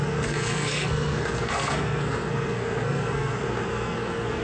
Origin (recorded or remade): remade